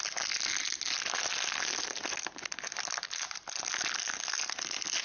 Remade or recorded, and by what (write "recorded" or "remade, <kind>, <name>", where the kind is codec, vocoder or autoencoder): recorded